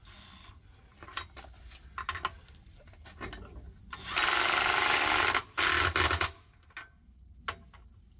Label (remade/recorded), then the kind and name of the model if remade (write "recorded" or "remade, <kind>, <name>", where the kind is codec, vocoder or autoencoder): recorded